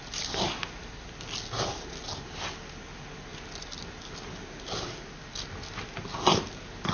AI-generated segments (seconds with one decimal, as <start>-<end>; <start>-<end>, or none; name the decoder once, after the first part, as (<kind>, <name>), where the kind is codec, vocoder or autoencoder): none